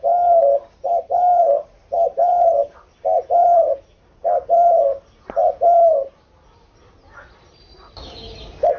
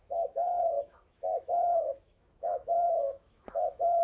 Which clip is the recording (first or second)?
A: first